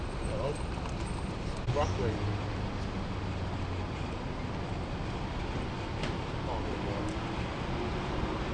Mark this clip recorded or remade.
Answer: recorded